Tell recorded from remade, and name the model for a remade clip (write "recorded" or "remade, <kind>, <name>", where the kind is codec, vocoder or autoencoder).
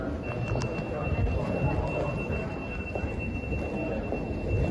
recorded